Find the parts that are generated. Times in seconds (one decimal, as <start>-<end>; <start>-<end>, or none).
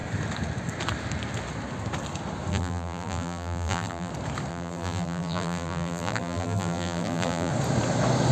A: 2.5-4.1; 4.5-7.5